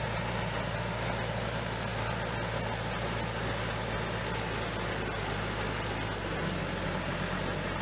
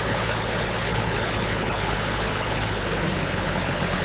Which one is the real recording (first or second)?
first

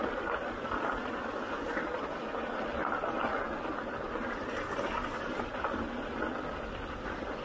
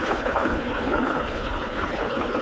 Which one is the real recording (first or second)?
first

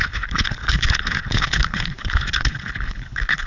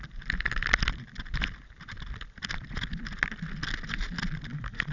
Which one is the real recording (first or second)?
second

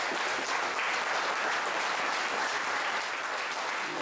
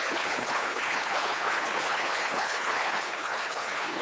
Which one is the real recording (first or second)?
first